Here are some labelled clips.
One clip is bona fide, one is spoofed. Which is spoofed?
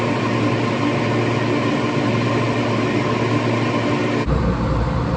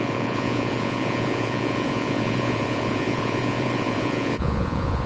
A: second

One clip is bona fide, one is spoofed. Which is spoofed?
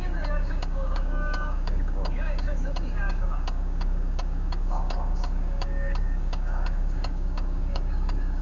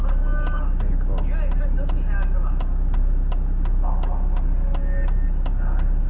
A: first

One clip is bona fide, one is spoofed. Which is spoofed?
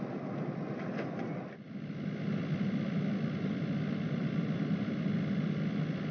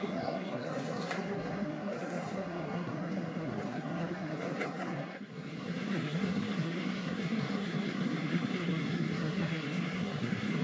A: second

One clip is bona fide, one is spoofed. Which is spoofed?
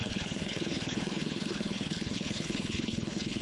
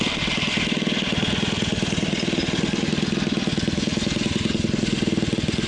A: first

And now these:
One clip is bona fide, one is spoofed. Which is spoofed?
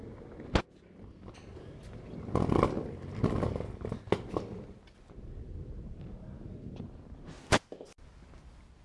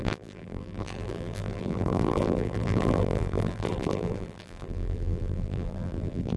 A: second